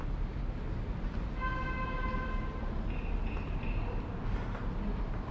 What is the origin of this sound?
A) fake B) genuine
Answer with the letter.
B